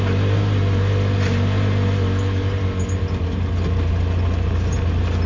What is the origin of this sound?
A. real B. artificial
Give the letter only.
A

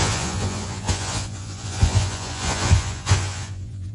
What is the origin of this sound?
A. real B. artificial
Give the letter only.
B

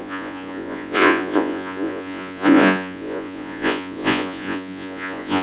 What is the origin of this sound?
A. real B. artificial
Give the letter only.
B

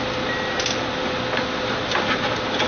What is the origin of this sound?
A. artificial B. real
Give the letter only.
B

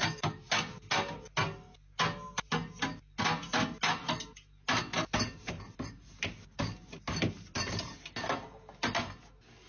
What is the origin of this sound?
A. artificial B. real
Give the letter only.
B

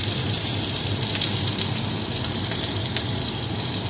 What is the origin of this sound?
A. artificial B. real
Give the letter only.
A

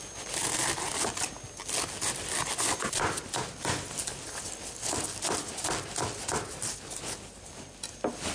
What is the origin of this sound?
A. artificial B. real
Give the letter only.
B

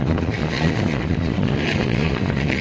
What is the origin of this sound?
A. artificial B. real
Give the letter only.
A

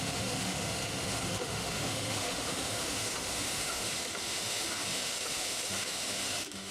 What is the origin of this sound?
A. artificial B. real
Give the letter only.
A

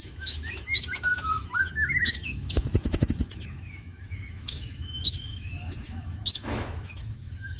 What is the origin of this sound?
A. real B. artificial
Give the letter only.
B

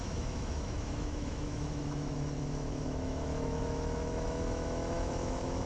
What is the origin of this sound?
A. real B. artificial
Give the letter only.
B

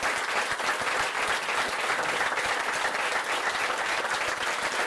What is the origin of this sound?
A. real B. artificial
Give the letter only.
A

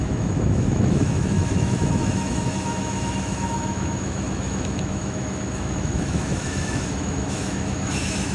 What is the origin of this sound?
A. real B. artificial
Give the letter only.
B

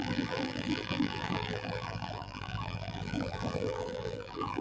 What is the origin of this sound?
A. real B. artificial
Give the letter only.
B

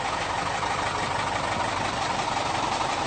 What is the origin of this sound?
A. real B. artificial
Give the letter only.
A